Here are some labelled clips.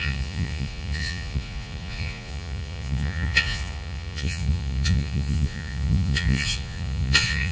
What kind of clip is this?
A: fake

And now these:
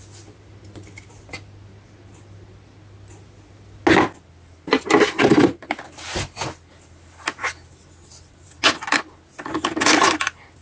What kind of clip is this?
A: real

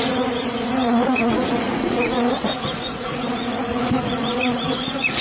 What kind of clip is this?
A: fake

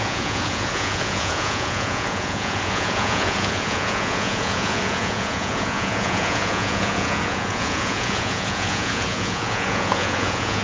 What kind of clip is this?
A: fake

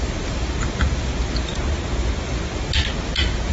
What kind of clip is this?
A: real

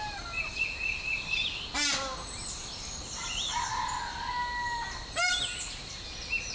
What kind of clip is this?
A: real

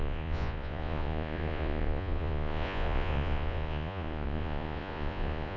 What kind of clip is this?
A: fake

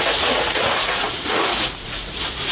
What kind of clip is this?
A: fake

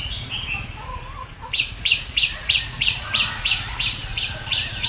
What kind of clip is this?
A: fake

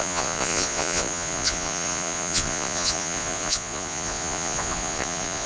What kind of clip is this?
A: fake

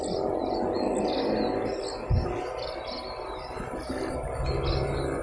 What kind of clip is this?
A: real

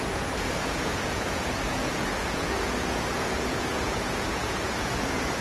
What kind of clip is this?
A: fake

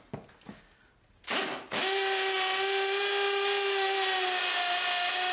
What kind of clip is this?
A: real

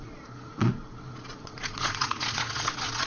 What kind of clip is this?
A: fake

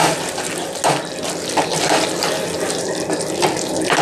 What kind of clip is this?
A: real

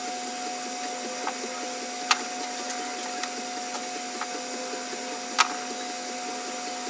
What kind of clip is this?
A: real